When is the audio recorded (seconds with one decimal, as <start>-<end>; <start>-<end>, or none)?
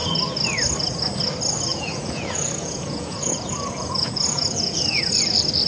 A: 0.0-1.7; 5.1-5.7